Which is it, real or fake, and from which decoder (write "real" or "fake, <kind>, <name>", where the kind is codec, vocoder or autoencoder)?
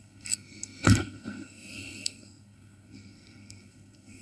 fake, codec, SNAC